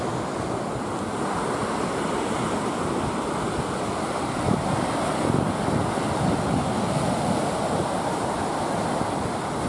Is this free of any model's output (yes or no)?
yes